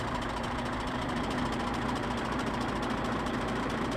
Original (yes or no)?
no